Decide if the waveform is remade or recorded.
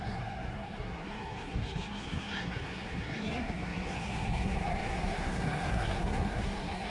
remade